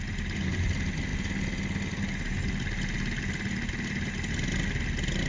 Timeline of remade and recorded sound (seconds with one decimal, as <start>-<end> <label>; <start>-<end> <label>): 0.0-5.3 recorded